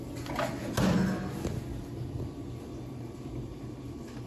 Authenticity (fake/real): real